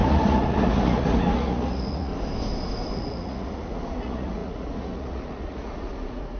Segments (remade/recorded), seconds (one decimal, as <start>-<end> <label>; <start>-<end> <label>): 0.0-2.1 remade; 2.1-2.9 recorded; 2.9-6.4 remade